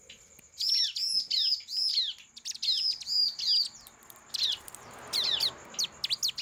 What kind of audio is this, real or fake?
real